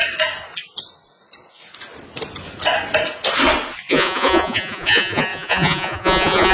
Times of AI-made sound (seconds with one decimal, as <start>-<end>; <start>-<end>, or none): 3.9-6.5